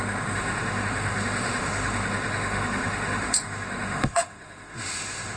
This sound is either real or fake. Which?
fake